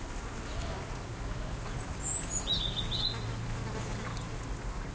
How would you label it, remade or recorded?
recorded